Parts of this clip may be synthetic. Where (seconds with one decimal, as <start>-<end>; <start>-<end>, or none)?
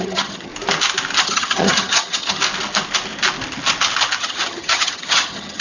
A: 0.0-0.5; 1.2-2.4; 4.2-5.6